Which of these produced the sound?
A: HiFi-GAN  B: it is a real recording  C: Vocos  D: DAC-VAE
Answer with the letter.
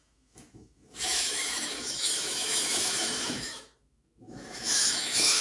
D